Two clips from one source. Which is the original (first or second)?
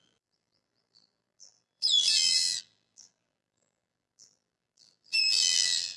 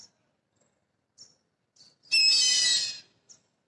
second